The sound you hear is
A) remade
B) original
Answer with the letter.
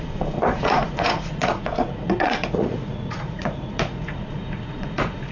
A